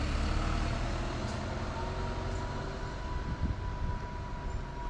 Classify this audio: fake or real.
real